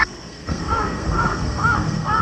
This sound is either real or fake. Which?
fake